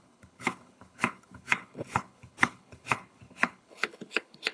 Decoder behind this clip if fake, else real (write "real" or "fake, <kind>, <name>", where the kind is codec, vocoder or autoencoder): fake, codec, HILCodec